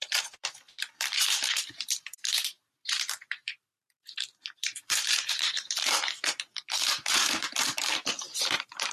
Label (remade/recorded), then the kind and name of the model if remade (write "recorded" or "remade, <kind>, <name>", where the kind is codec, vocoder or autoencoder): remade, vocoder, BigVGAN v2